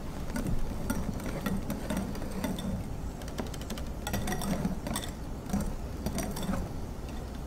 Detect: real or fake real